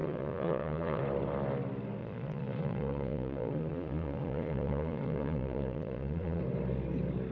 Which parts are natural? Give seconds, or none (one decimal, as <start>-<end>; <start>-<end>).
1.0-2.0; 6.4-7.3